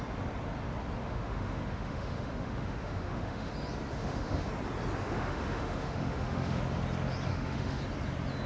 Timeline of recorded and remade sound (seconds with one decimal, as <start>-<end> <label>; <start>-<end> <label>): 0.0-1.0 recorded; 1.0-3.5 remade; 3.5-3.9 recorded; 3.9-4.5 remade; 4.5-5.0 recorded; 5.0-6.6 remade; 6.6-7.3 recorded; 7.3-7.8 remade; 7.8-8.5 recorded